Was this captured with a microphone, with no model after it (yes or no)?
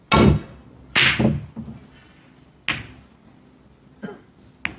yes